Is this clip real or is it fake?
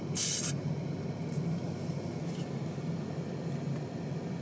real